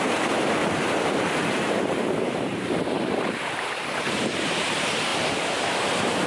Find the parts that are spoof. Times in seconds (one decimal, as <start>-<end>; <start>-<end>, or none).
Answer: 0.0-5.1